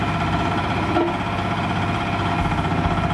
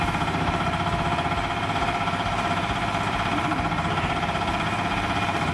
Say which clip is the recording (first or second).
first